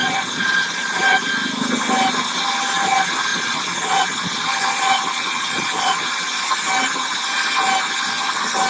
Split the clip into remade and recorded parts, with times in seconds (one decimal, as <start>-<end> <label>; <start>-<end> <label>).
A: 0.0-1.3 remade; 1.3-3.3 recorded; 3.3-6.5 remade; 6.5-8.7 recorded